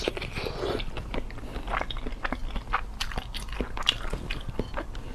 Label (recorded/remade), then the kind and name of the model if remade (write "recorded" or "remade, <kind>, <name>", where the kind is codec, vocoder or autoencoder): recorded